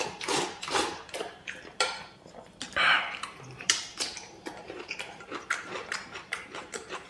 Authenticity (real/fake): fake